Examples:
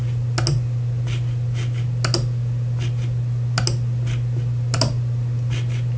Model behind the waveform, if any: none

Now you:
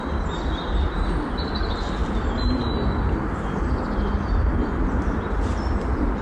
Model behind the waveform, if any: none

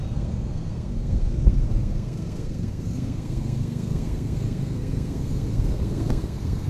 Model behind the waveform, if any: codec, SNAC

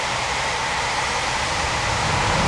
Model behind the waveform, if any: vocoder, BigVGAN v2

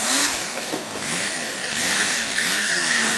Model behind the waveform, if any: codec, DAC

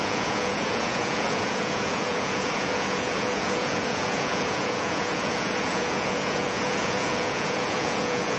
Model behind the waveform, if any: vocoder, Vocos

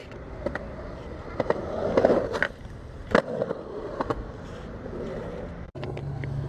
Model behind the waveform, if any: none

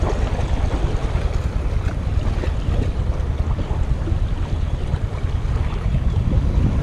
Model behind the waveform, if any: none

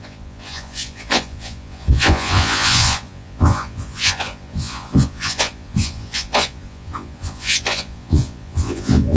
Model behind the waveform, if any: vocoder, Vocos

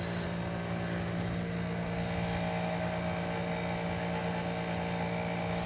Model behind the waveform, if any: none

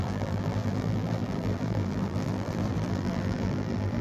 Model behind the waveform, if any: vocoder, BigVGAN v2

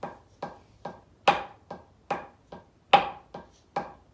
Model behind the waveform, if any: none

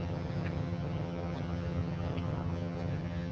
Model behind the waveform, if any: vocoder, HiFi-GAN